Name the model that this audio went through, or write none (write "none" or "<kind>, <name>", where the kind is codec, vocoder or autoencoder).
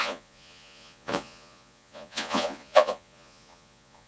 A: vocoder, Vocos